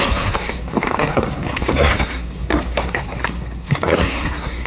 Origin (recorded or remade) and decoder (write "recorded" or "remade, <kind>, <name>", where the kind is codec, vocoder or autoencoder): remade, codec, SNAC